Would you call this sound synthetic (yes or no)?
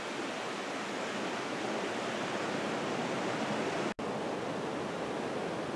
no